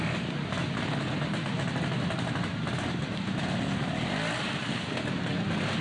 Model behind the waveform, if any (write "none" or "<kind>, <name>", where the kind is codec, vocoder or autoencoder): none